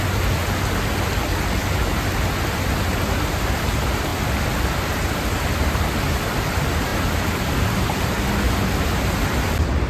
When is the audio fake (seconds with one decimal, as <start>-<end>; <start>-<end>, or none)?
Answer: none